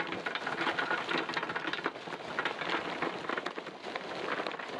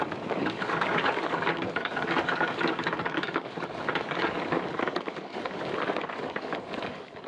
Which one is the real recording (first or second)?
first